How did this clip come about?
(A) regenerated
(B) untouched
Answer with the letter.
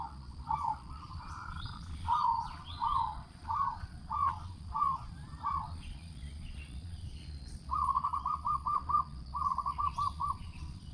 A